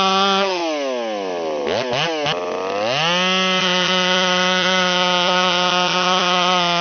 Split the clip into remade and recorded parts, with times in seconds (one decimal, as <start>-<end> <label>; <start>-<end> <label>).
0.0-0.6 remade; 0.6-3.6 recorded; 3.6-6.8 remade